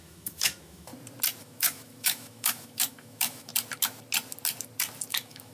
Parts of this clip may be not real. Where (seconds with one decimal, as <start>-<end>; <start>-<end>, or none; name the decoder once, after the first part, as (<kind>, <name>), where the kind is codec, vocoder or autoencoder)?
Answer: 0.0-0.9 (autoencoder, DAC-VAE); 1.4-3.5; 5.1-5.5